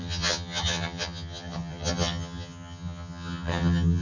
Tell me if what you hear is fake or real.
fake